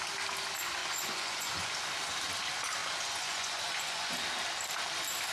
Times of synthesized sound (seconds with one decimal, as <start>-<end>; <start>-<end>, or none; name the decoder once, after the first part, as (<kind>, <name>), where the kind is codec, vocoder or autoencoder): 0.8-1.7 (vocoder, Vocos); 2.8-4.1